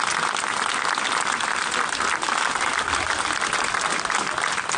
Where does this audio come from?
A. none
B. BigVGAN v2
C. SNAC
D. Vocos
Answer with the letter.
A